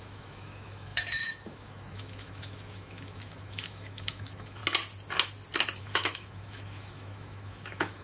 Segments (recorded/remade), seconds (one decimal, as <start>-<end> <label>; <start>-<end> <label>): 0.0-4.6 remade; 4.6-5.8 recorded; 5.8-8.0 remade